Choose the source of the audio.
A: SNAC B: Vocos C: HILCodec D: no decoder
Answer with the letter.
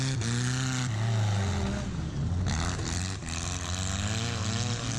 D